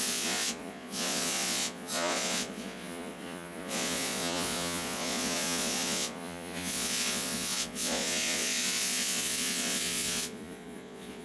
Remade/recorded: remade